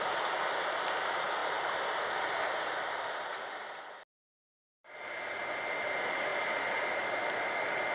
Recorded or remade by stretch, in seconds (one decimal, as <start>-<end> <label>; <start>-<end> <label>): 0.0-7.9 recorded